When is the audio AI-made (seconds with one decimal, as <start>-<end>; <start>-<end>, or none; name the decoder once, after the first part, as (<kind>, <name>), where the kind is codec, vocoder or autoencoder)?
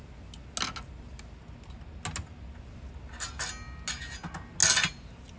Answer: none